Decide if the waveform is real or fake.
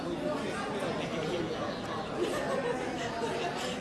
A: real